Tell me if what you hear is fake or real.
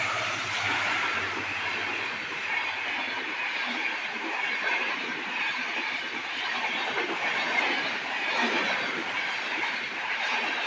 fake